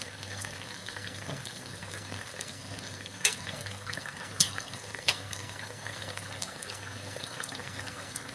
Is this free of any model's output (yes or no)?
no